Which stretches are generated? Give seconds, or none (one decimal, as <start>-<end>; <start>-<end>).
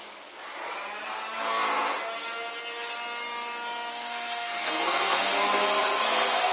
3.9-6.5